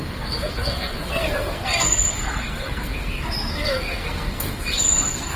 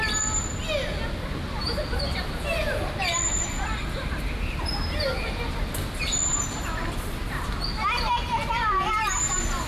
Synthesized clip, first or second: first